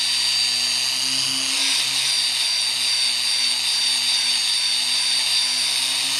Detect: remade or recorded recorded